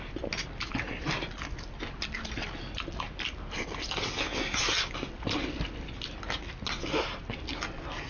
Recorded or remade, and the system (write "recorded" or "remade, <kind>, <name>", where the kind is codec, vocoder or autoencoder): recorded